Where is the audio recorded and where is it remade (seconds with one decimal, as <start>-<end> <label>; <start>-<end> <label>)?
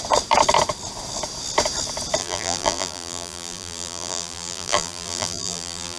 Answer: 0.0-2.2 recorded; 2.2-6.0 remade